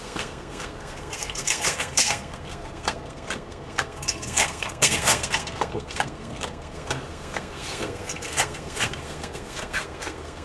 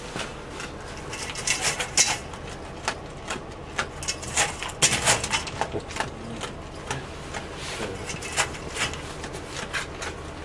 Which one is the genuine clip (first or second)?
second